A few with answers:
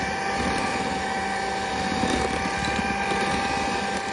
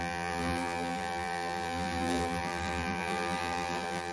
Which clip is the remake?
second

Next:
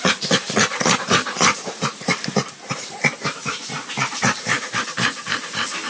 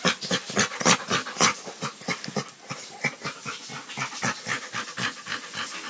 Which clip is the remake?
first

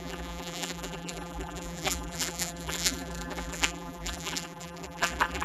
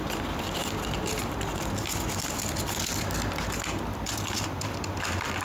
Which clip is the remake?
first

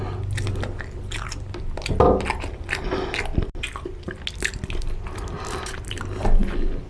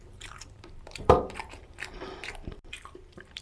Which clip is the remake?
second